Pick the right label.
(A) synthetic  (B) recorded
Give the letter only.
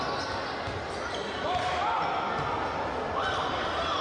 B